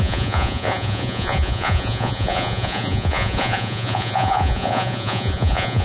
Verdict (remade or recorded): remade